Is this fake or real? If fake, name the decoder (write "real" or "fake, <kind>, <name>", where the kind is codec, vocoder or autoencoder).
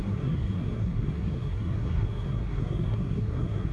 fake, codec, SNAC